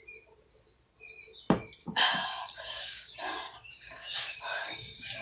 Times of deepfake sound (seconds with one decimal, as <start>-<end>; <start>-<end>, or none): 1.8-5.2